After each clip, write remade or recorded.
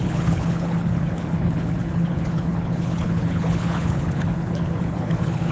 remade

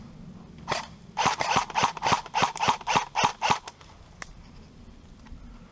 recorded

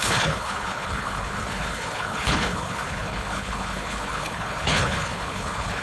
remade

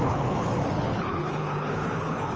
remade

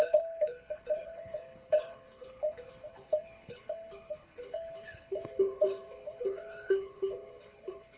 remade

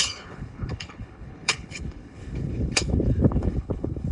remade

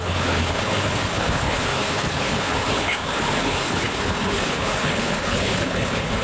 remade